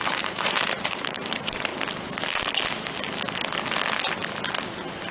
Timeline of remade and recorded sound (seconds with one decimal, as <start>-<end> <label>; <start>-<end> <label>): 0.0-1.7 remade; 1.7-5.1 recorded

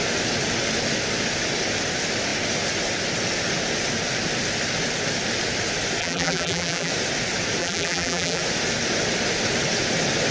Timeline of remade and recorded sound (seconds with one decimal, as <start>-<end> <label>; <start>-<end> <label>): 0.0-6.0 recorded; 6.0-6.9 remade; 6.9-7.6 recorded; 7.6-8.4 remade; 8.4-10.3 recorded

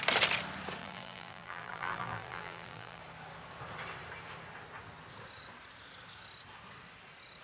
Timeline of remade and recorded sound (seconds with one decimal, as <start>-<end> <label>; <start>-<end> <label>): 0.0-0.8 recorded; 0.8-3.0 remade; 3.0-7.4 recorded

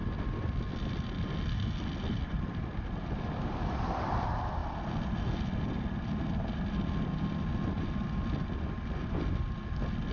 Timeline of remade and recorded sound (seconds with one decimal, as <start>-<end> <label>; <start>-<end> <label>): 0.0-0.7 remade; 0.7-10.1 recorded

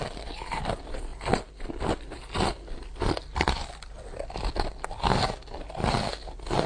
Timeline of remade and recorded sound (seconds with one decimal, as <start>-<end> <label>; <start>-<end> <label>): 0.0-1.1 remade; 1.1-1.8 recorded; 1.8-6.7 remade